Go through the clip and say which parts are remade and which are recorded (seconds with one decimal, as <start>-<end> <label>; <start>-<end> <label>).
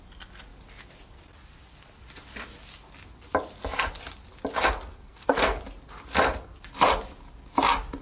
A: 0.0-4.9 recorded; 4.9-5.6 remade; 5.6-8.0 recorded